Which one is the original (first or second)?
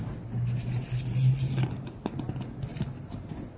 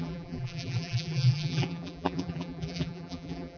first